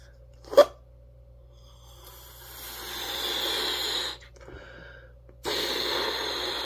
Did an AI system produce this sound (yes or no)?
no